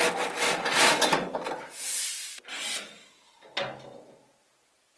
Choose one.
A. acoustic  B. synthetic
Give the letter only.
A